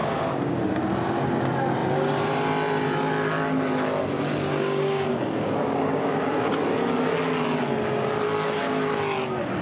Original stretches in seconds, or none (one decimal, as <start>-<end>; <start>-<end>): 0.6-4.4; 6.5-9.6